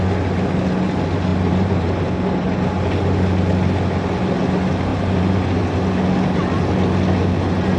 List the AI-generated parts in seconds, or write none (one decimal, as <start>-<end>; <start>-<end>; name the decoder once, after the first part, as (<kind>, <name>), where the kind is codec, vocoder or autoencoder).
1.3-2.0 (vocoder, BigVGAN v2); 4.9-5.6